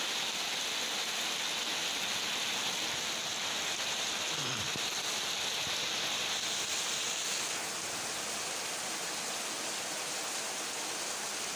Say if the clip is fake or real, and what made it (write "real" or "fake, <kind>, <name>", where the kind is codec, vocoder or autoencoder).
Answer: real